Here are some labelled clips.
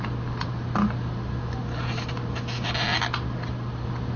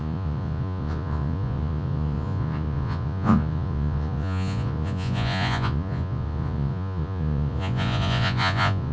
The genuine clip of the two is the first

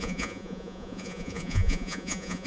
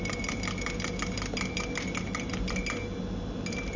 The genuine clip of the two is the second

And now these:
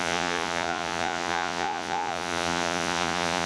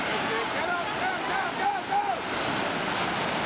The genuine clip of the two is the second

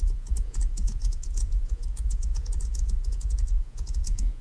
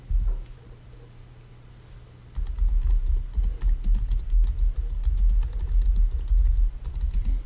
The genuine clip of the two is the second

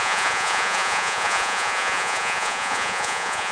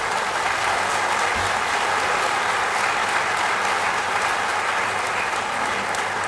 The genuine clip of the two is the second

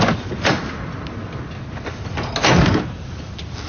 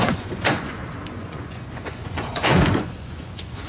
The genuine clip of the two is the first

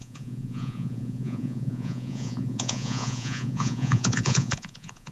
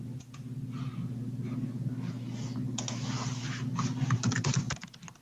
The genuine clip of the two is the second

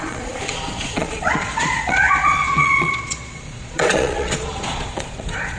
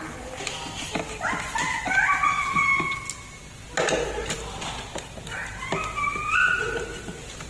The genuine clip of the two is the second